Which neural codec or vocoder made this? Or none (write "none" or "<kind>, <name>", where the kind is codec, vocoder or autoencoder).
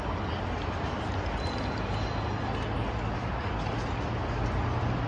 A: none